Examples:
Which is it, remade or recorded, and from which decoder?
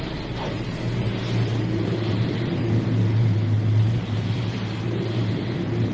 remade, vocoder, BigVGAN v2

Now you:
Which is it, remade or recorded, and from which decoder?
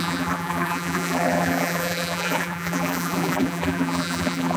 remade, vocoder, BigVGAN v2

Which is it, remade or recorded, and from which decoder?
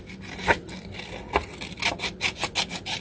recorded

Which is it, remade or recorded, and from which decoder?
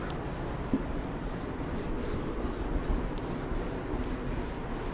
remade, vocoder, BigVGAN v2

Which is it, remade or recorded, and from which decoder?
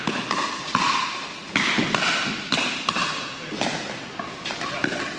recorded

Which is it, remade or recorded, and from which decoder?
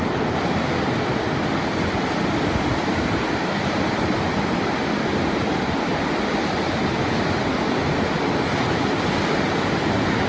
recorded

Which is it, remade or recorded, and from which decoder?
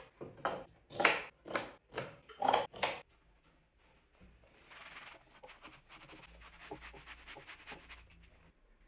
recorded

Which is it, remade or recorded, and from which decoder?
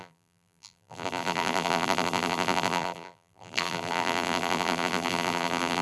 remade, vocoder, BigVGAN v2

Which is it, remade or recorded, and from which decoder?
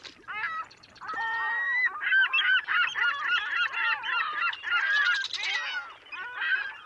remade, vocoder, BigVGAN v2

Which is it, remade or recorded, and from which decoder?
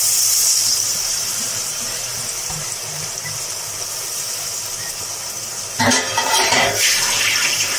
remade, vocoder, BigVGAN v2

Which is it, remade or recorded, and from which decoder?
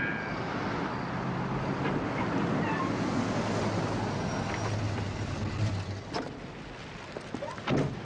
recorded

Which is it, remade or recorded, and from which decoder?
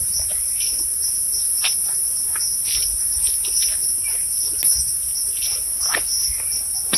recorded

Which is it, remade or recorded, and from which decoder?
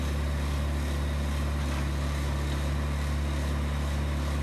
recorded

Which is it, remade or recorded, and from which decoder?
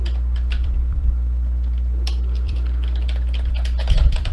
remade, vocoder, BigVGAN v2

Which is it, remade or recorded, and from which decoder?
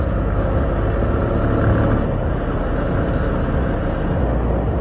recorded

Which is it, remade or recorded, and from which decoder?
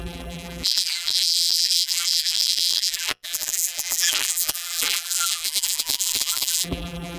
remade, vocoder, BigVGAN v2